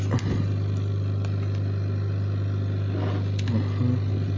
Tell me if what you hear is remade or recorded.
recorded